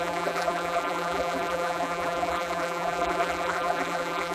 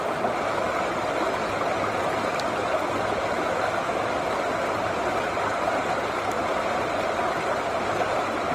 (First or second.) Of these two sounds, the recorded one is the second